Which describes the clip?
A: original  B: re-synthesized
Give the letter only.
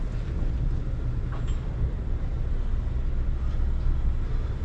A